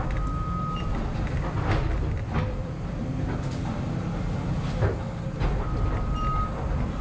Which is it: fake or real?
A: real